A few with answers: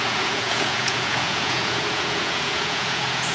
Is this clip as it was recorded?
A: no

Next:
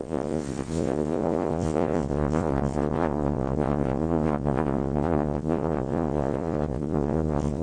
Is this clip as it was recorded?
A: no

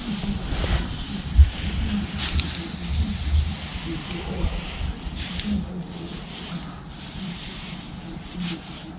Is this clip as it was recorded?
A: yes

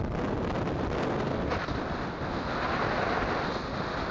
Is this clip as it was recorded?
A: yes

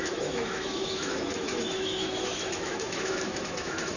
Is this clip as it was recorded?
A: no